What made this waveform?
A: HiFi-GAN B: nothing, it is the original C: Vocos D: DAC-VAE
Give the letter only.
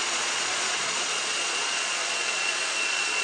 C